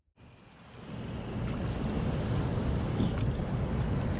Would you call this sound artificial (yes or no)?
no